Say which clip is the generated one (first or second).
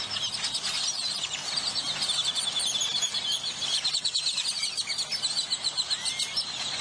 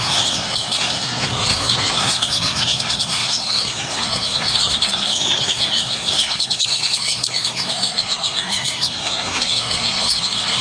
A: second